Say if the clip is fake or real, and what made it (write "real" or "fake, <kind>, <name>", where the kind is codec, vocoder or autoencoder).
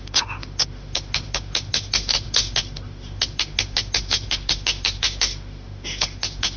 fake, autoencoder, DAC-VAE